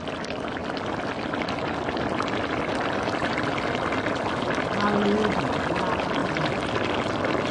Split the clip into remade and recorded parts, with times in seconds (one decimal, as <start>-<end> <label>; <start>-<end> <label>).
0.0-7.5 recorded